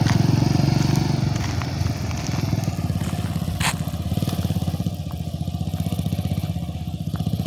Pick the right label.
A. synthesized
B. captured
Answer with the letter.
B